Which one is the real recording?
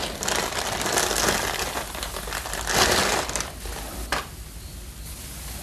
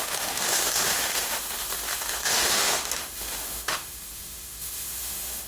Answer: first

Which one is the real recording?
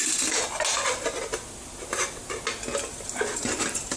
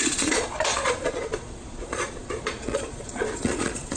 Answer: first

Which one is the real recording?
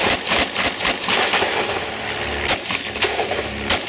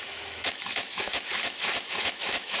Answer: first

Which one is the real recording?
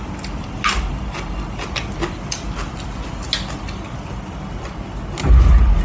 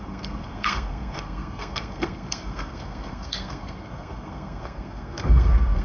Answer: first